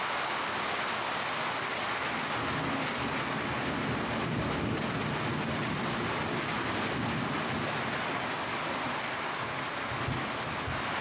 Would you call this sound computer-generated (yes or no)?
no